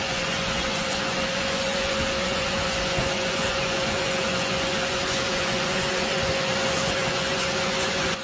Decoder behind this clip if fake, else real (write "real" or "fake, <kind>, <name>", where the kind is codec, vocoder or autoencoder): fake, vocoder, Vocos